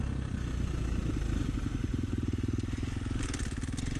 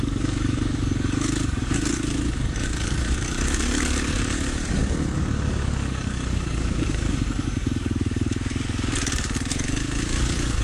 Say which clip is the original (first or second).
first